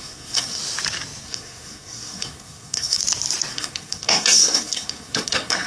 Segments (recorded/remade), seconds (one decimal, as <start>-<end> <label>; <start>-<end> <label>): 0.0-0.6 remade; 0.6-1.2 recorded; 1.2-3.0 remade; 3.0-3.5 recorded; 3.5-5.7 remade